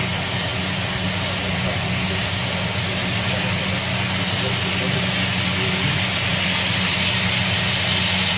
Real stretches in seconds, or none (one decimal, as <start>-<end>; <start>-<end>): 0.0-8.4